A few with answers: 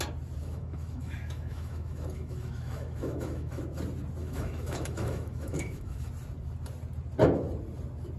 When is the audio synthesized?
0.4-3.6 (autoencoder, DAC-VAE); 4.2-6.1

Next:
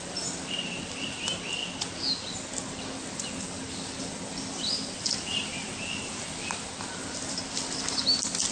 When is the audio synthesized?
none

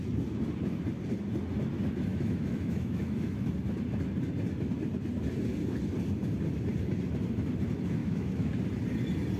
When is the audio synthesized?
2.1-3.5 (autoencoder, DAC-VAE); 8.0-8.5

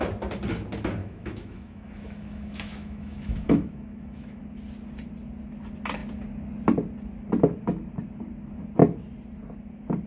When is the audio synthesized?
1.0-4.4 (autoencoder, DAC-VAE)

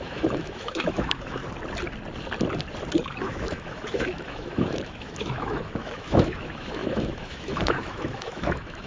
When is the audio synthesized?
0.0-1.4 (autoencoder, DAC-VAE); 3.2-8.9

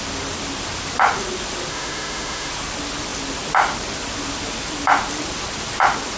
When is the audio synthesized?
1.7-2.5 (autoencoder, DAC-VAE)